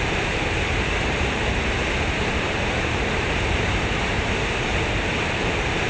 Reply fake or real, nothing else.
fake